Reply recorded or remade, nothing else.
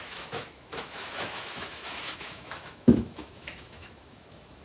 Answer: remade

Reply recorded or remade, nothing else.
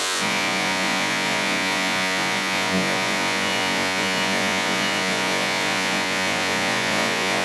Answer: remade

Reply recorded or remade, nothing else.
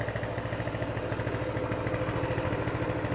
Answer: recorded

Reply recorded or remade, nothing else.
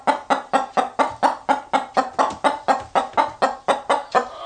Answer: recorded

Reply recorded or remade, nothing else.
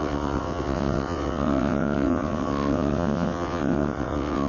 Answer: remade